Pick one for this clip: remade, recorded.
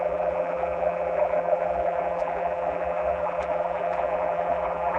remade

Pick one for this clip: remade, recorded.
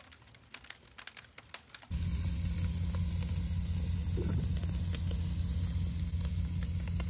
recorded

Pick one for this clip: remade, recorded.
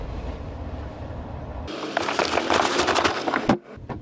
recorded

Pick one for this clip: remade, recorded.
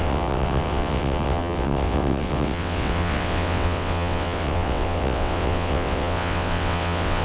remade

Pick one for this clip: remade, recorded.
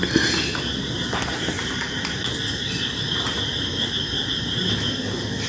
recorded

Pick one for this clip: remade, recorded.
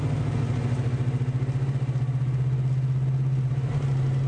recorded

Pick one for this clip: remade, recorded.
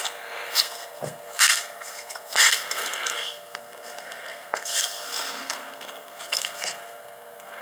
remade